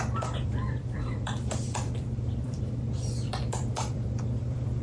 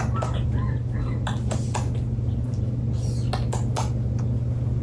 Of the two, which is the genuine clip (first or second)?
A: second